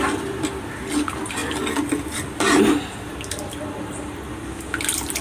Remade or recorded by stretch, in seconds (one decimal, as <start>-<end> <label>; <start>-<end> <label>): 0.0-5.2 recorded

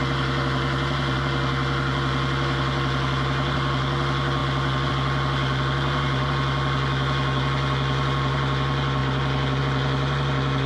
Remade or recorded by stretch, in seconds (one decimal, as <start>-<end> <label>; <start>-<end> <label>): 0.0-10.7 recorded

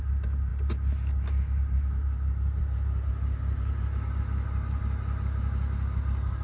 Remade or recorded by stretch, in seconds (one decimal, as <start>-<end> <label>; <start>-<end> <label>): 0.0-6.4 recorded

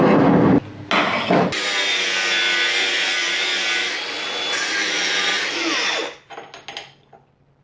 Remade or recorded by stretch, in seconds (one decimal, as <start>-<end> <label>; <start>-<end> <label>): 0.0-7.6 recorded

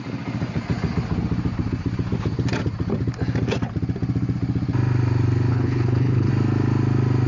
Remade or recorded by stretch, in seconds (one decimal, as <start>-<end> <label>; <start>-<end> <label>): 0.0-5.5 recorded; 5.5-6.3 remade; 6.3-7.3 recorded

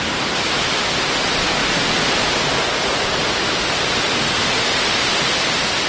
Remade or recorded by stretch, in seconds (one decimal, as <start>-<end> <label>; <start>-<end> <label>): 0.0-5.9 recorded